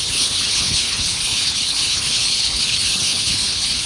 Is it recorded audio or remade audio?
remade